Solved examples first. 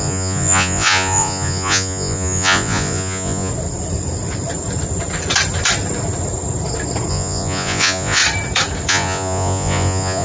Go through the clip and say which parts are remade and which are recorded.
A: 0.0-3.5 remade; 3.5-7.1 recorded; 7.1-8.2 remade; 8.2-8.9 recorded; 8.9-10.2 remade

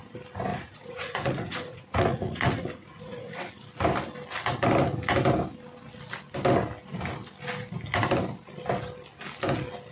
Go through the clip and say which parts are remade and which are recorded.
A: 0.0-0.5 recorded; 0.5-3.5 remade; 3.5-9.9 recorded

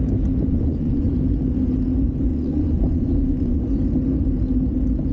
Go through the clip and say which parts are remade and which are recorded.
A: 0.0-0.5 recorded; 0.5-1.1 remade; 1.1-2.3 recorded; 2.3-3.6 remade; 3.6-5.1 recorded

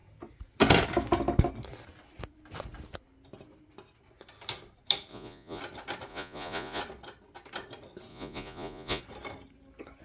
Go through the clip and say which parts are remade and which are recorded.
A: 0.0-5.1 recorded; 5.1-5.6 remade; 5.6-6.1 recorded; 6.1-6.8 remade; 6.8-8.1 recorded; 8.1-9.0 remade; 9.0-10.0 recorded

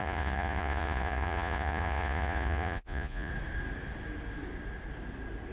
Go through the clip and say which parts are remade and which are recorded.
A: 0.0-3.3 remade; 3.3-5.5 recorded